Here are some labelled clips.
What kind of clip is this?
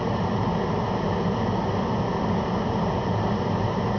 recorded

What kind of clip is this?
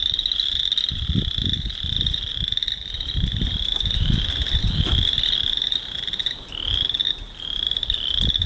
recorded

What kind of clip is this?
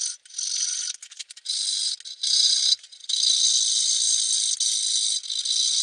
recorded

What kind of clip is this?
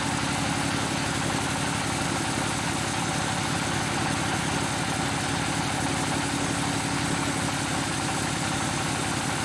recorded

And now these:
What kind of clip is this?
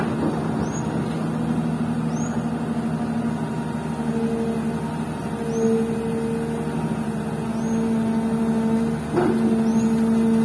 recorded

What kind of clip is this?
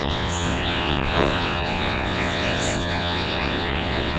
remade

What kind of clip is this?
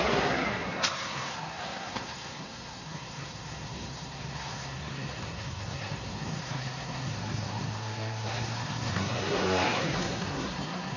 remade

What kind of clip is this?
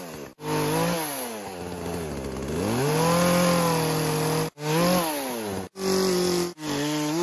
recorded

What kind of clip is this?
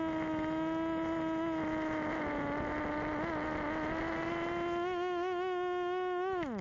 recorded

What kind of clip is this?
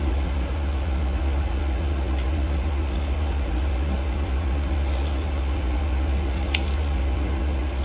remade